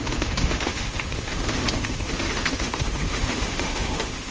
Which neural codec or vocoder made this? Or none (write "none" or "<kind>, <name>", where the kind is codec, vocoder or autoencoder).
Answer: autoencoder, DAC-VAE